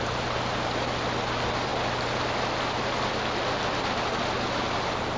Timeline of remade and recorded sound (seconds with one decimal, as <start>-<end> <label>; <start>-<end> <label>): 0.0-5.2 recorded